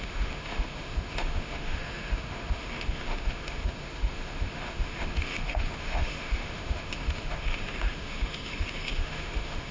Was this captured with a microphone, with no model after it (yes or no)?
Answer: no